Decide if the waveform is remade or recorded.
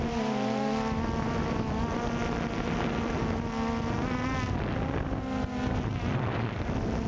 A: recorded